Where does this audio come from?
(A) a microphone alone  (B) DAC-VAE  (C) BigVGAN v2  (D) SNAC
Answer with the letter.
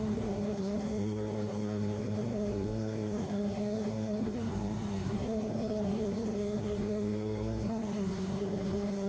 D